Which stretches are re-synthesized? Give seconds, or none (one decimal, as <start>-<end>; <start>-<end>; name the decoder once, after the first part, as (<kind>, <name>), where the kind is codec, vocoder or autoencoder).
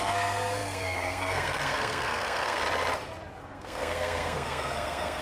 0.0-2.6 (codec, SNAC); 3.4-5.2